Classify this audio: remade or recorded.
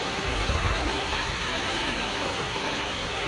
remade